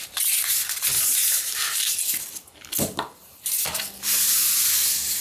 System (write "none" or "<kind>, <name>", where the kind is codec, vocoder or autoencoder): none